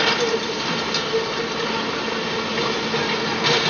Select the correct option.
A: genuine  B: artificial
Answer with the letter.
A